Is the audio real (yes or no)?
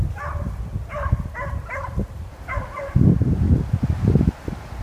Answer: yes